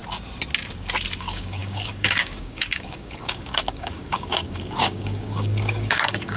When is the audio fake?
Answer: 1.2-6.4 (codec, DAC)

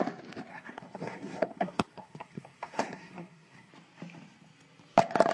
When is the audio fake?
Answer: 0.5-3.7 (codec, SNAC)

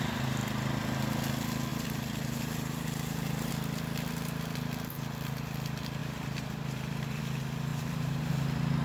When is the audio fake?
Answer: 1.7-3.5 (vocoder, BigVGAN v2); 6.0-7.2; 7.7-8.3

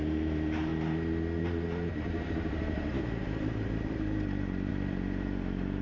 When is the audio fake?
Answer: 0.0-0.7 (vocoder, BigVGAN v2); 1.4-5.8

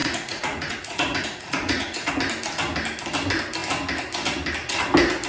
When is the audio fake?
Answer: 0.0-2.1 (vocoder, Vocos)